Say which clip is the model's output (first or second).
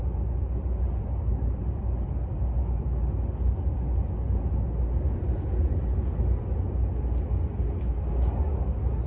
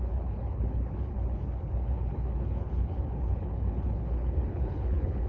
second